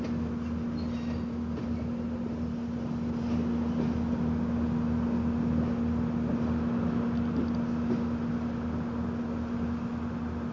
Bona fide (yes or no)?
yes